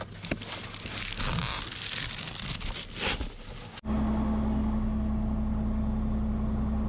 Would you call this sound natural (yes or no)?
yes